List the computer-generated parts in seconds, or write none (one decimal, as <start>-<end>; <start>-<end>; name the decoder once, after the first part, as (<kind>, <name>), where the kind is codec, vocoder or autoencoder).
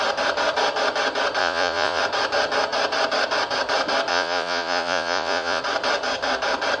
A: 1.4-2.0 (vocoder, Vocos); 4.1-5.6